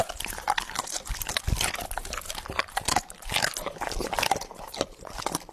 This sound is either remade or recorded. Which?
recorded